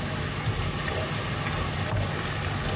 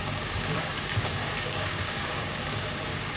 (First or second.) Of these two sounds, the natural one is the first